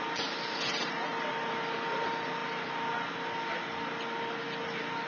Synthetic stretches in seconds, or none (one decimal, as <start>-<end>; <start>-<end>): none